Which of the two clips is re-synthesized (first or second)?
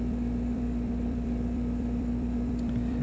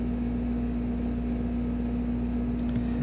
first